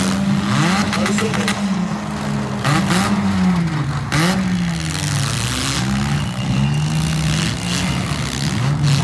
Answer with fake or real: real